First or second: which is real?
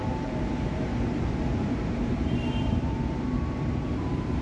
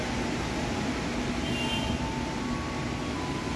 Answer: second